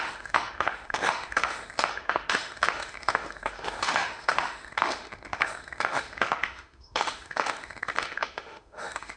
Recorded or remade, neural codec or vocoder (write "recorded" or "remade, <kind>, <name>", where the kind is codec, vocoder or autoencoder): remade, autoencoder, DAC-VAE